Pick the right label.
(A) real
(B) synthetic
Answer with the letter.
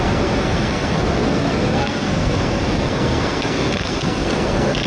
B